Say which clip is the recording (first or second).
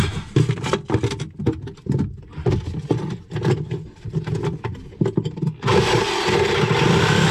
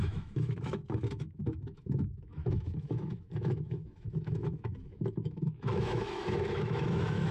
first